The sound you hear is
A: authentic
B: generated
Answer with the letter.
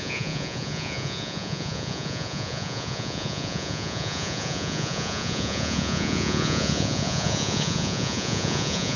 B